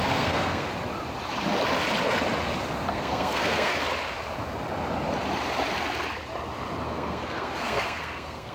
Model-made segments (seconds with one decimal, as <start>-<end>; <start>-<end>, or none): 0.0-0.7; 2.9-3.8; 6.8-8.5

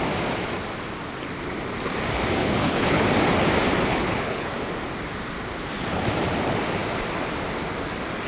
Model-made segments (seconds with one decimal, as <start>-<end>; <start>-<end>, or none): 2.4-3.0; 3.9-4.5

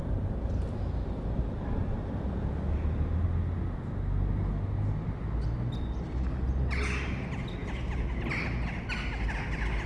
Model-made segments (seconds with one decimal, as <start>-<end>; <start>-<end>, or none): none

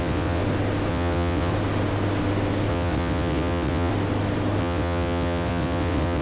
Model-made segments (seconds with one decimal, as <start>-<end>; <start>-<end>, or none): 0.0-0.4; 0.9-1.5; 2.7-3.9; 4.6-6.2

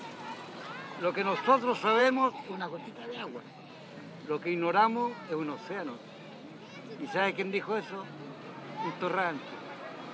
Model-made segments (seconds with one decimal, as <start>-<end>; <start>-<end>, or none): 2.0-3.7

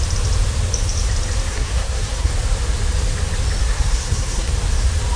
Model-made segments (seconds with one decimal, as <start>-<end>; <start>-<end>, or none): 1.5-2.3; 3.6-4.5

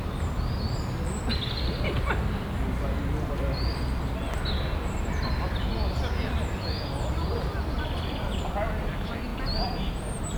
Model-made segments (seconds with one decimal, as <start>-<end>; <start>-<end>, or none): 9.3-10.4

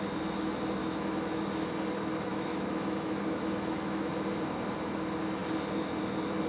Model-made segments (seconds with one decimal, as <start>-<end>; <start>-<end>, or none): 0.8-1.4; 2.3-4.1